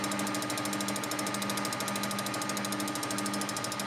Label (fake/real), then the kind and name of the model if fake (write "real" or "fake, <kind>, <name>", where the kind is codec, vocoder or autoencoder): real